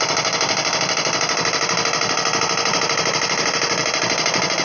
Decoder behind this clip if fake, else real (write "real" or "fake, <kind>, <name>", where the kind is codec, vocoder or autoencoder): real